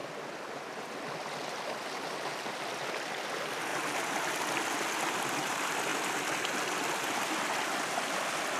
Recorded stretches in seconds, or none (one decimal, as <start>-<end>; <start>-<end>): 0.0-3.7; 4.5-8.6